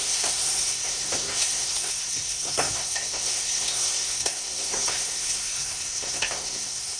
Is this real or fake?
fake